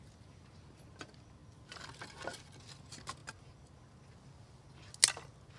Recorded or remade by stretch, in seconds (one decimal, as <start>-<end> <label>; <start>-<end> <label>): 0.0-5.6 recorded